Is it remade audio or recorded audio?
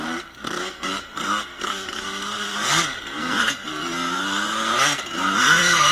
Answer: remade